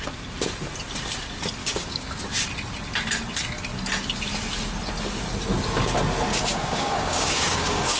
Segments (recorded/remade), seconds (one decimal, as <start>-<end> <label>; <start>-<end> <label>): 0.0-1.6 recorded; 1.6-2.2 remade; 2.2-6.3 recorded; 6.3-8.0 remade